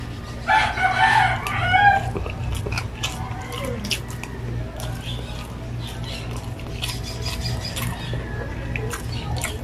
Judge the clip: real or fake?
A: real